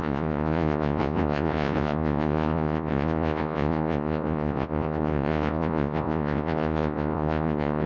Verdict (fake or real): fake